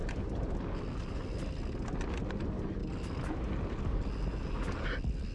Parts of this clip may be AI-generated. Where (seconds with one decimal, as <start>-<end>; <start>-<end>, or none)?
none